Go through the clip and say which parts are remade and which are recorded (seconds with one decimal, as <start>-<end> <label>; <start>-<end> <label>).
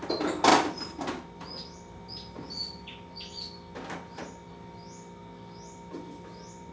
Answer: 0.0-6.7 recorded